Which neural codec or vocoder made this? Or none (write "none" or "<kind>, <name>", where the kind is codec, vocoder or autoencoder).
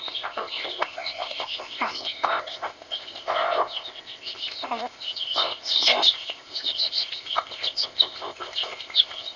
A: codec, ZipCodec